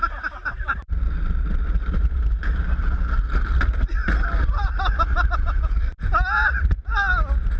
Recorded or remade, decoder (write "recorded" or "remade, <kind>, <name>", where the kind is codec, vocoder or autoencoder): recorded